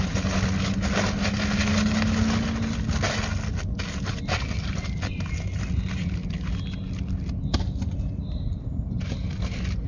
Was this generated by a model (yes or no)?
no